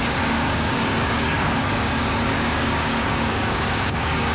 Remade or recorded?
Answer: remade